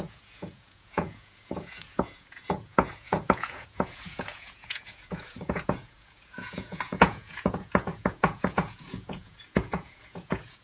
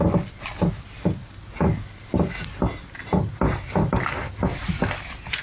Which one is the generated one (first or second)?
first